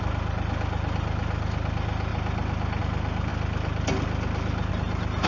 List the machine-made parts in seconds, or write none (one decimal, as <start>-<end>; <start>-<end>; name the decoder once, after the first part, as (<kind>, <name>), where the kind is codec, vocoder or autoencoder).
none